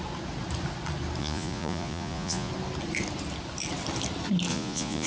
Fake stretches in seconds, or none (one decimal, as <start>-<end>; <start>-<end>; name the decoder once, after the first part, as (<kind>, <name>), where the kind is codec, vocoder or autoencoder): 1.2-2.5 (vocoder, Vocos); 4.5-5.1

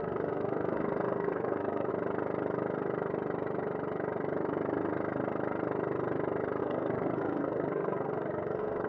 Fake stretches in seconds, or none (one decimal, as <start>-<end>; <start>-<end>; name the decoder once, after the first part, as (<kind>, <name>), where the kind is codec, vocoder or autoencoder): 0.0-1.9 (codec, SNAC); 6.6-8.9